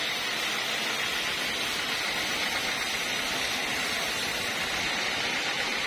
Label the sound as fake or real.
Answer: real